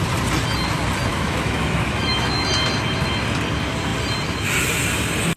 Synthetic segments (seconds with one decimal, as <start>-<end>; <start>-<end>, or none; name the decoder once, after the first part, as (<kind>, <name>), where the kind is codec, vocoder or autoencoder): 1.1-2.5 (autoencoder, DAC-VAE)